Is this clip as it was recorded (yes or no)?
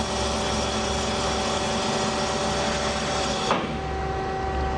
yes